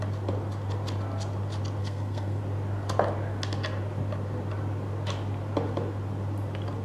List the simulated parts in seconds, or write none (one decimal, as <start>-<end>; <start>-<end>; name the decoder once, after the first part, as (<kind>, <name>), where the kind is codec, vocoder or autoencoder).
1.8-2.4 (codec, SNAC)